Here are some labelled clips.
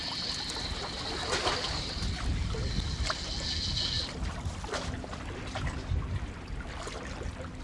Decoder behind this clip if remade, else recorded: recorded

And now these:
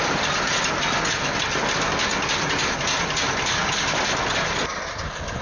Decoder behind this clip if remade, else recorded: recorded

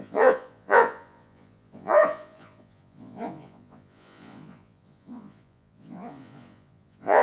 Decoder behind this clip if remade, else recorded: remade, vocoder, Vocos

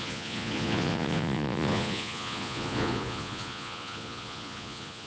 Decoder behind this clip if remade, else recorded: remade, vocoder, Vocos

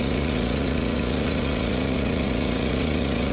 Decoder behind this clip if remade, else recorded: remade, vocoder, Vocos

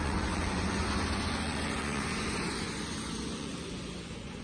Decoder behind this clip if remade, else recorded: remade, vocoder, Vocos